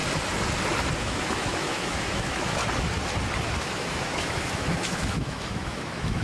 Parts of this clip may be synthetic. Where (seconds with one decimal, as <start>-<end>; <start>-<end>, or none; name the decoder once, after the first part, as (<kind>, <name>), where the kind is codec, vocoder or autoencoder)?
1.0-2.6 (autoencoder, DAC-VAE); 3.6-6.2